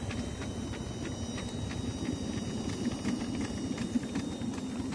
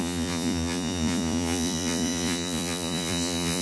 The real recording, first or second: first